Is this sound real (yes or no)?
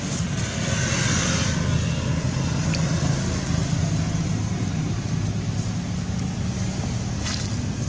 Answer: yes